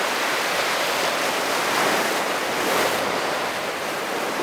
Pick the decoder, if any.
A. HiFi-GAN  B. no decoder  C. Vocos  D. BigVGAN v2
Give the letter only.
D